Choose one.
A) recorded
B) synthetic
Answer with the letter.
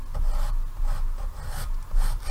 A